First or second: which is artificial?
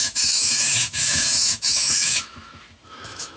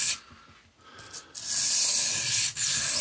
first